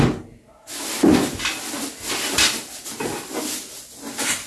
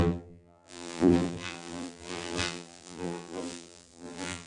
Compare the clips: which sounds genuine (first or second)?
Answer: first